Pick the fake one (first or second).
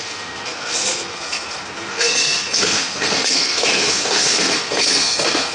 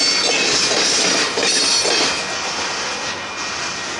first